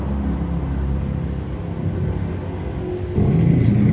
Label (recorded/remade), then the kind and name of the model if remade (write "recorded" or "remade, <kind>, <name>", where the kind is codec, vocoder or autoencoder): recorded